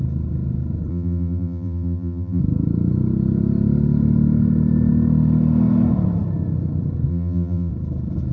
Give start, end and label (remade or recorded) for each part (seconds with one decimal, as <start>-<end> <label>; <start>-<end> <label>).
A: 0.0-0.9 recorded; 0.9-2.4 remade; 2.4-7.1 recorded; 7.1-7.7 remade; 7.7-8.3 recorded